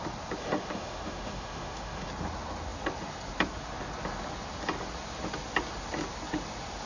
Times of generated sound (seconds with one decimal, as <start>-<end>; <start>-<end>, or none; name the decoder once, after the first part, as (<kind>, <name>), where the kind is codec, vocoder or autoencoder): 0.4-2.1 (autoencoder, DAC-VAE)